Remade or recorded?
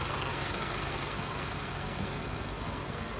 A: remade